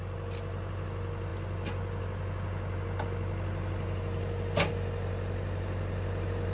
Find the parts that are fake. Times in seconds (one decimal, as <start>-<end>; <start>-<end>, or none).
none

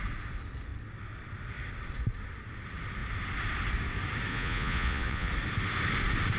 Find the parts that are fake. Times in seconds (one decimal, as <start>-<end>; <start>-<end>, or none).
4.3-5.3